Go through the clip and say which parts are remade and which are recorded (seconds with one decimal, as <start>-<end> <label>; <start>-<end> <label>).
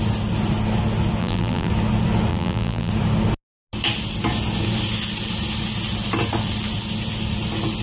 0.0-1.2 recorded; 1.2-1.7 remade; 1.7-2.3 recorded; 2.3-2.9 remade; 2.9-7.8 recorded